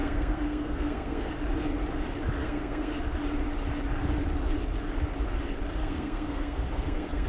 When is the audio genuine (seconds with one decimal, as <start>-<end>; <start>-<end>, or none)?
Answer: 1.3-2.4; 3.0-5.8